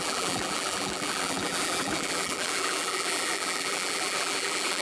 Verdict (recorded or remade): remade